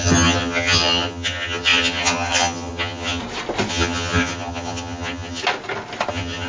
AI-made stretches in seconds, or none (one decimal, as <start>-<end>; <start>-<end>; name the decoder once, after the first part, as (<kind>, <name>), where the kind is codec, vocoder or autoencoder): 0.0-3.2 (vocoder, HiFi-GAN); 3.7-5.4; 6.1-6.5